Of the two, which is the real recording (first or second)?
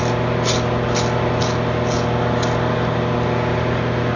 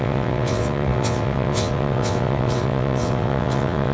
first